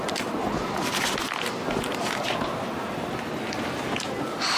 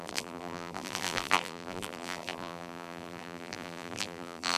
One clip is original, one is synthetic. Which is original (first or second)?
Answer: first